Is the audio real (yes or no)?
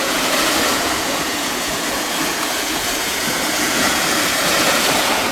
no